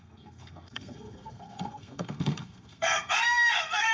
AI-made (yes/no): yes